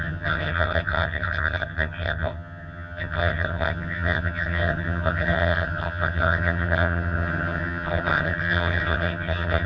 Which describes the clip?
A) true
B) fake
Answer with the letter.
B